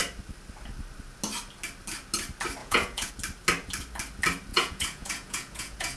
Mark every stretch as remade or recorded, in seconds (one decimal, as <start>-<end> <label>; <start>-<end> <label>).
0.0-2.6 recorded; 2.6-3.1 remade; 3.1-4.5 recorded; 4.5-6.0 remade